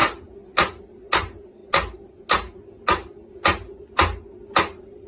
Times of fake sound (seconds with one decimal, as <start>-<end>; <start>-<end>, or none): none